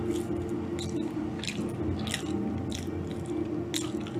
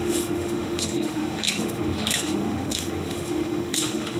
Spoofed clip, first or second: second